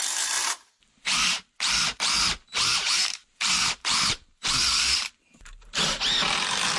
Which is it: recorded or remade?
remade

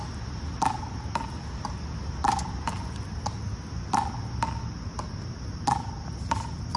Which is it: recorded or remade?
recorded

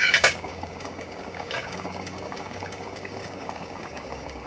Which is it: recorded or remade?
remade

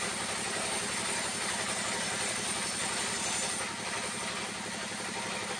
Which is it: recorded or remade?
recorded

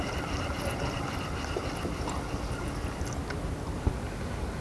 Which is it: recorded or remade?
recorded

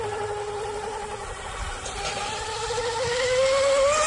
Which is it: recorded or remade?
recorded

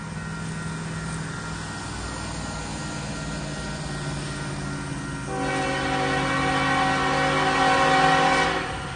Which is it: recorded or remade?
recorded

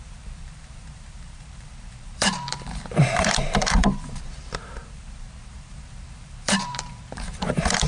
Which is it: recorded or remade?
remade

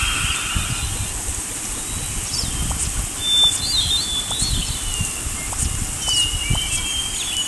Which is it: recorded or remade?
recorded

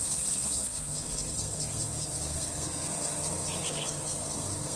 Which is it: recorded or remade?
remade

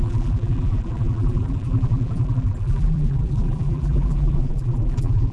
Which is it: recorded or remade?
remade